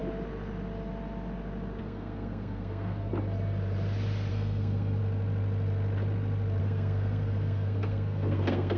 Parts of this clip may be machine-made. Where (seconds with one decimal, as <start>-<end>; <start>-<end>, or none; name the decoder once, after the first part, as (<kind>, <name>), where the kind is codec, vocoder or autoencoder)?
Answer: 1.8-3.1 (codec, SNAC); 4.3-5.0; 6.6-8.8